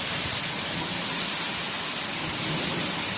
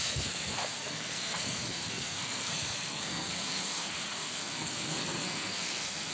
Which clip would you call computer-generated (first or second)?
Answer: second